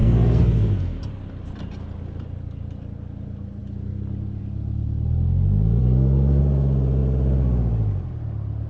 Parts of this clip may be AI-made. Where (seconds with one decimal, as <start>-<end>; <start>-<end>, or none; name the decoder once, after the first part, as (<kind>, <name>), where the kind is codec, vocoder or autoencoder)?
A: 0.0-1.0 (codec, SNAC); 5.8-6.4